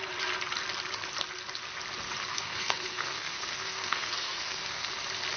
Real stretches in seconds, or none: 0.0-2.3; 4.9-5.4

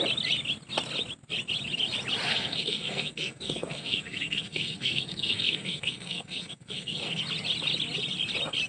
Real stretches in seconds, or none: 0.0-2.3; 7.2-8.7

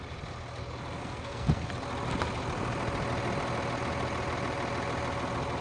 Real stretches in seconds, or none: 0.0-1.0; 1.7-5.6

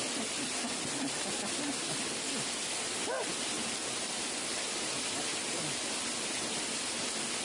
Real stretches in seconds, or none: 0.0-7.4